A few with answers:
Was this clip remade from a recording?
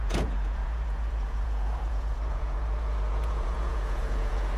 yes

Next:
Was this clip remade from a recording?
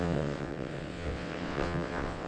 yes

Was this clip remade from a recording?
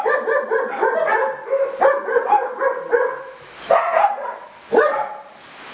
no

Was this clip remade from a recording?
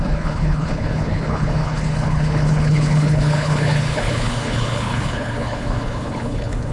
yes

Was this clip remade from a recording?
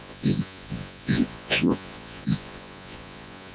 yes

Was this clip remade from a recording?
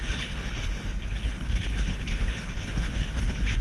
yes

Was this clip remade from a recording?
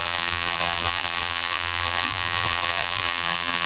yes